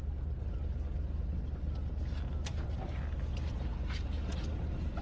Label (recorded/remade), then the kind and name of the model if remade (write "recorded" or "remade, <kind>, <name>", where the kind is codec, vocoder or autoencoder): recorded